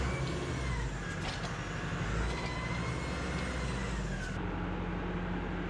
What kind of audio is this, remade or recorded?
recorded